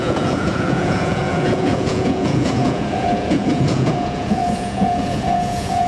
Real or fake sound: fake